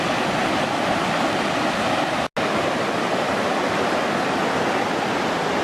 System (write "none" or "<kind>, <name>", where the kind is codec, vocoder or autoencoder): none